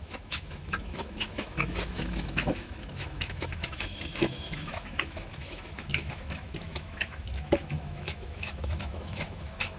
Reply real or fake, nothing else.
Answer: fake